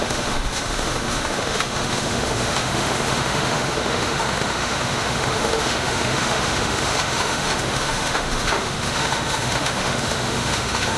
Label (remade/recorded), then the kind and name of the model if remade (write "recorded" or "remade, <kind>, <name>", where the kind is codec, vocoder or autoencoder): remade, autoencoder, DAC-VAE